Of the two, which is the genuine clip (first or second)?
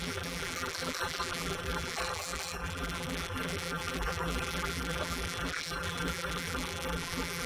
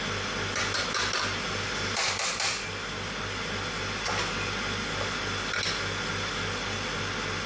second